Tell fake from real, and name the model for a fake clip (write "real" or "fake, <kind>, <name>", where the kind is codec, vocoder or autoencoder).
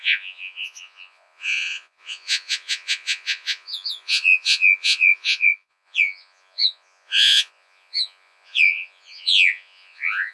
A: fake, vocoder, Vocos